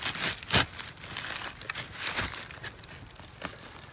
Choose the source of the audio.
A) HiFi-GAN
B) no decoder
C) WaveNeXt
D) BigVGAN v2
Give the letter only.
B